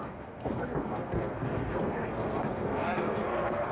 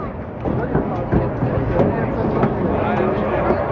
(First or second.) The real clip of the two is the second